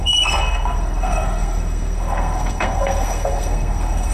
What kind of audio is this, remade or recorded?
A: remade